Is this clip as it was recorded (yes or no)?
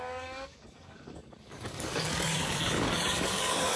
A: no